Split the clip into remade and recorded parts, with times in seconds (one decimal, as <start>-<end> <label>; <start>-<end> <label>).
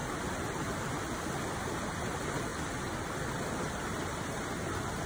0.0-5.1 recorded